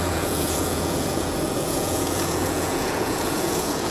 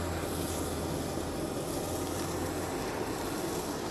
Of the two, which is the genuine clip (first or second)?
second